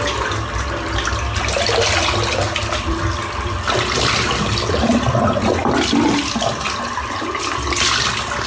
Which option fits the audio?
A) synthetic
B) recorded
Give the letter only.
B